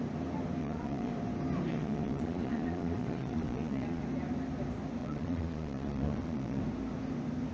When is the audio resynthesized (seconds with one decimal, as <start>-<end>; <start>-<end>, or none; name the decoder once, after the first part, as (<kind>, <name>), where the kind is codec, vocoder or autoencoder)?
0.6-1.1 (vocoder, Vocos); 1.7-4.0; 5.0-6.6

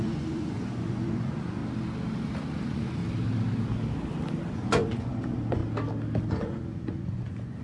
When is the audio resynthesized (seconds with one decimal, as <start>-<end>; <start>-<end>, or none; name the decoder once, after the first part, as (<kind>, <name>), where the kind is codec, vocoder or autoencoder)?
0.0-1.6 (vocoder, Vocos); 2.6-3.0; 4.5-5.6; 6.3-7.6

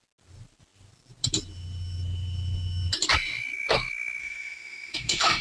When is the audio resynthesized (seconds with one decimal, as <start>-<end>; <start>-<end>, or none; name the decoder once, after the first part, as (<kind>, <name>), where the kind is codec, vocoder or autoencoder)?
4.2-5.4 (autoencoder, DAC-VAE)

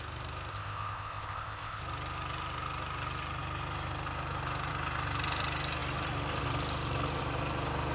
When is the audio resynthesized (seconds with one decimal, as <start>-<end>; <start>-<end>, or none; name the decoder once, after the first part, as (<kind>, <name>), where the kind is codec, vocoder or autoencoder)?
0.5-1.8 (codec, ZipCodec)

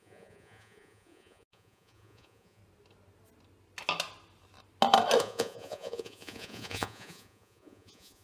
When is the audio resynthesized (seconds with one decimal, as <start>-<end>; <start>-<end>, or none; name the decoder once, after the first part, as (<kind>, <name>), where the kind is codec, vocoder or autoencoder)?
0.0-2.6 (vocoder, Vocos); 5.2-8.2

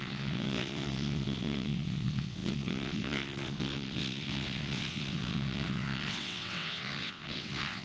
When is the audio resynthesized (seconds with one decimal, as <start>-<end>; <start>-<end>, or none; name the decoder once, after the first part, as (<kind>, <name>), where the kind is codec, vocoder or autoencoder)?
0.0-7.8 (vocoder, WaveNeXt)

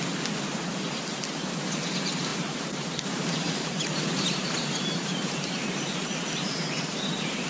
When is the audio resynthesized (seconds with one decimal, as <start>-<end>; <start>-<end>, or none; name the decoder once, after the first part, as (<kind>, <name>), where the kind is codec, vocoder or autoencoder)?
2.3-6.0 (vocoder, BigVGAN v2)

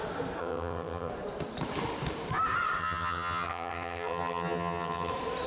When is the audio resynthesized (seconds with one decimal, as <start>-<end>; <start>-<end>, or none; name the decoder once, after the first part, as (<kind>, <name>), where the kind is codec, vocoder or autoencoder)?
0.4-1.1 (vocoder, HiFi-GAN); 2.8-5.1